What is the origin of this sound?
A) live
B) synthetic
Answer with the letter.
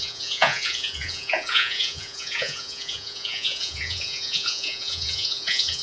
B